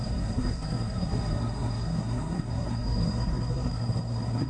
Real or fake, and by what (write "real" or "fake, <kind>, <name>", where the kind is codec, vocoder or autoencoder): fake, codec, SNAC